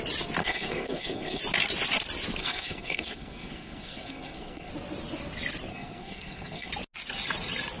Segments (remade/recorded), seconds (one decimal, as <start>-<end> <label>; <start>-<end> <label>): 0.0-0.4 recorded; 0.4-1.4 remade; 1.4-2.4 recorded; 2.4-4.7 remade; 4.7-5.7 recorded; 5.7-6.7 remade; 6.7-7.8 recorded